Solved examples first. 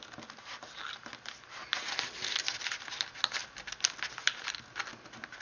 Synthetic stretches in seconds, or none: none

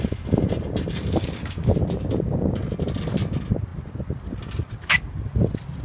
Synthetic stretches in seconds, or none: 1.2-1.7 (codec, DAC)

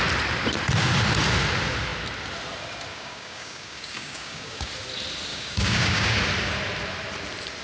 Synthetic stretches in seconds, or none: 2.9-4.7 (codec, DAC); 5.3-6.2

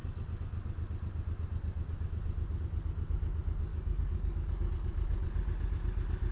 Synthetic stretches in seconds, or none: 3.7-4.7 (codec, DAC)

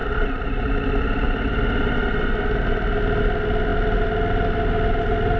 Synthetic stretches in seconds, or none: none

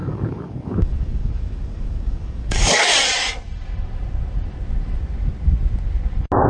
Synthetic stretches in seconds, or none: 0.0-2.9 (codec, DAC)

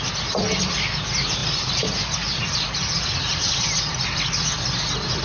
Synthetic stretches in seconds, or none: none